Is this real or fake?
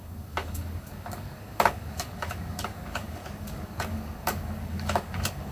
fake